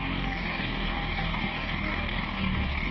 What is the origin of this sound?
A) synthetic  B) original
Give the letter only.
A